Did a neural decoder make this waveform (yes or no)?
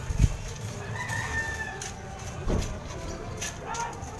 no